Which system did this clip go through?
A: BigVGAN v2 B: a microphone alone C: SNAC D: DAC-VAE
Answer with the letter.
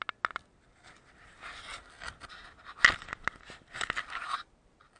B